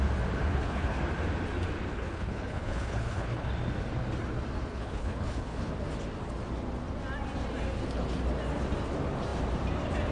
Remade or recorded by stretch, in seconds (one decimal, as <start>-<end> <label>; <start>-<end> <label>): 0.0-0.5 recorded; 0.5-1.0 remade; 1.0-1.9 recorded; 1.9-3.5 remade; 3.5-4.7 recorded; 4.7-5.7 remade; 5.7-10.1 recorded